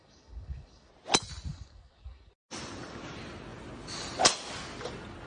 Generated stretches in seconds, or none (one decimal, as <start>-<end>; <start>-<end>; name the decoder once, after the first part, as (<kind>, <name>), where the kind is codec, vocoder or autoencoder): 0.0-0.9 (codec, DAC); 1.5-2.3

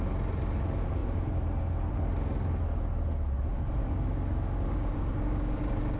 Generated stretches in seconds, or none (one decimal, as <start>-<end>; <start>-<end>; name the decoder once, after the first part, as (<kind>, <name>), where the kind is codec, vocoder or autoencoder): 3.8-5.6 (codec, DAC)